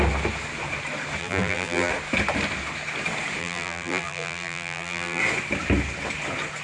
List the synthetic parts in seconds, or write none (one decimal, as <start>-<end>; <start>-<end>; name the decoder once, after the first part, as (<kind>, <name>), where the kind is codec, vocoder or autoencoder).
1.2-1.9 (vocoder, BigVGAN v2); 3.4-5.2